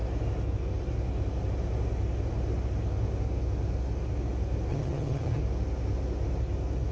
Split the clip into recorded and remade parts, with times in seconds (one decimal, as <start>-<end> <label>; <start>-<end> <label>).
0.0-4.7 recorded; 4.7-5.4 remade; 5.4-6.9 recorded